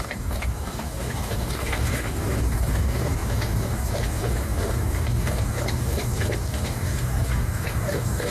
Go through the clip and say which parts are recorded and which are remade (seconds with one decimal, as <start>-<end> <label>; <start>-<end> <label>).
0.0-8.3 remade

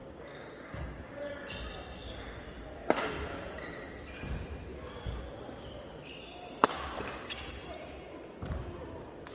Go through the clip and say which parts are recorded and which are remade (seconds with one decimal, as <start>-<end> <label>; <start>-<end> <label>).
0.0-1.2 remade; 1.2-4.7 recorded; 4.7-5.2 remade; 5.2-9.3 recorded

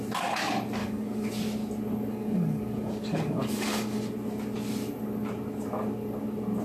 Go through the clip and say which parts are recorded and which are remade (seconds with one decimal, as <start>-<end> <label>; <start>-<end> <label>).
0.0-0.8 recorded; 0.8-1.3 remade; 1.3-2.1 recorded; 2.1-4.0 remade; 4.0-6.6 recorded

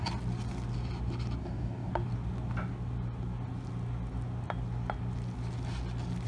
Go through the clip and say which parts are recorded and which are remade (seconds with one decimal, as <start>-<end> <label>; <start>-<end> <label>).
0.0-1.4 recorded; 1.4-1.9 remade; 1.9-6.3 recorded

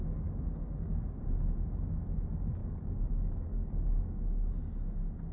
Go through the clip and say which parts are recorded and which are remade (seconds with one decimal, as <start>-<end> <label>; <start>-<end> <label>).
0.0-1.2 remade; 1.2-2.6 recorded; 2.6-4.5 remade; 4.5-5.3 recorded